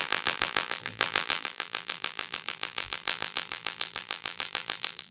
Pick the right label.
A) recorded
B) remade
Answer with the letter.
B